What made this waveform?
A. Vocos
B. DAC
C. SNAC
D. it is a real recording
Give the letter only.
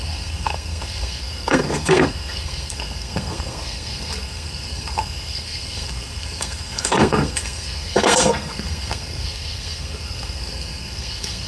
C